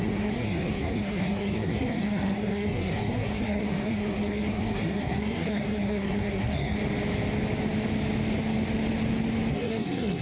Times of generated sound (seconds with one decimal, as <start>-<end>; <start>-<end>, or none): 0.0-6.8; 9.5-10.2